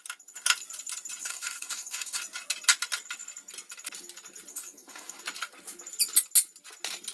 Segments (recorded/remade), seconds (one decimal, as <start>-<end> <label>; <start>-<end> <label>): 0.0-1.2 recorded; 1.2-2.2 remade; 2.2-4.5 recorded; 4.5-5.2 remade; 5.2-7.1 recorded